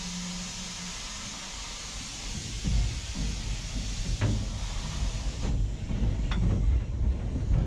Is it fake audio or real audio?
real